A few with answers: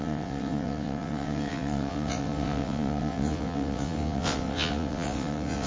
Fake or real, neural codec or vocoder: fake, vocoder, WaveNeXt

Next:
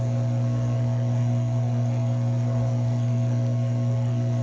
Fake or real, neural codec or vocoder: fake, codec, SNAC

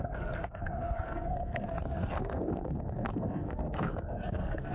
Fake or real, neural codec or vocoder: fake, codec, SNAC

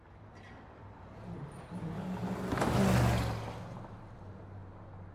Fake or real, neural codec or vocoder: real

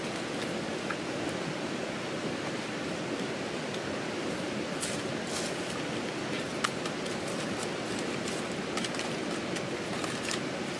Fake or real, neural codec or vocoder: real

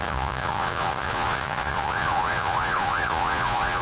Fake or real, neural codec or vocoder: fake, vocoder, Vocos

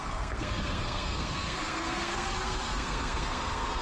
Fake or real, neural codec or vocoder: fake, codec, SNAC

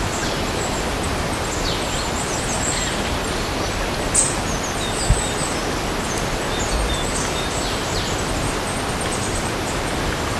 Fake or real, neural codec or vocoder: real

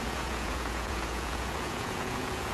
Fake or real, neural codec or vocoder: fake, vocoder, Vocos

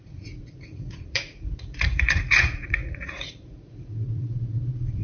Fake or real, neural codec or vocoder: fake, vocoder, Vocos